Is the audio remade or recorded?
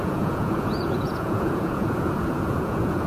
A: remade